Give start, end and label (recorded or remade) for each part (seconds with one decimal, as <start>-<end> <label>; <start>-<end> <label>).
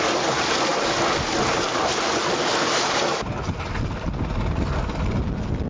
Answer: 0.0-5.7 recorded